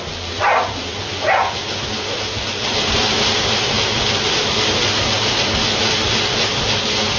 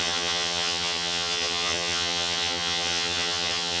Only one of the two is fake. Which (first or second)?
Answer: second